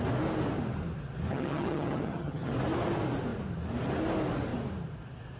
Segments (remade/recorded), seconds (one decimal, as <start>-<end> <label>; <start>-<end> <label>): 0.0-1.3 recorded; 1.3-2.5 remade; 2.5-5.4 recorded